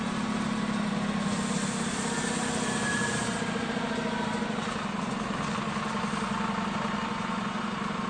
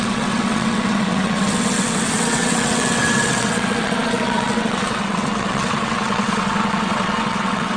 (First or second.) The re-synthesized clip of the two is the second